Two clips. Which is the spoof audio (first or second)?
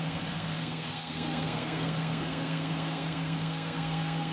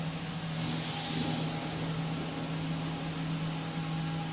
first